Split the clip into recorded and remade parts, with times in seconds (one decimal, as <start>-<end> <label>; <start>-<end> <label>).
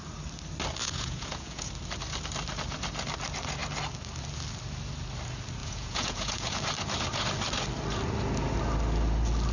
0.0-0.8 recorded; 0.8-1.7 remade; 1.7-5.6 recorded; 5.6-6.6 remade; 6.6-9.5 recorded